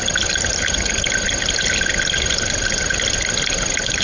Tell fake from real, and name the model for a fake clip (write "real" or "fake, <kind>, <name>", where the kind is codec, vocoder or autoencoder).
real